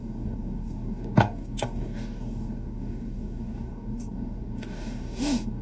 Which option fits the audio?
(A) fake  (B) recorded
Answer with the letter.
A